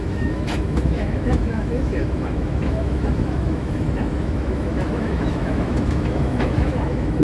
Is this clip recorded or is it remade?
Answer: remade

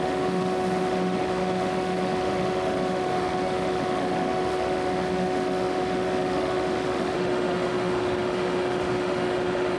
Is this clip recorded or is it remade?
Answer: remade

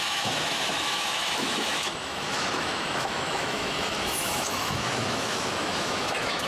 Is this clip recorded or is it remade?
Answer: remade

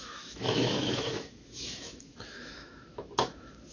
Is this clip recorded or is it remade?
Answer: remade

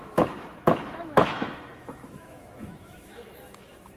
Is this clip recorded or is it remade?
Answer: remade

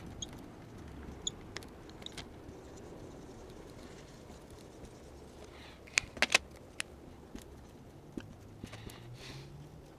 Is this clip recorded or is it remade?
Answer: recorded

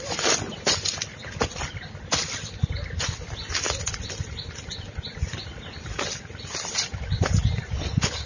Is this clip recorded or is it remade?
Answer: recorded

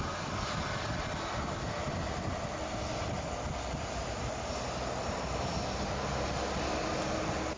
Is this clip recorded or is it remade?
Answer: recorded